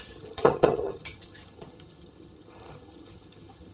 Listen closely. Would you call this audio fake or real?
fake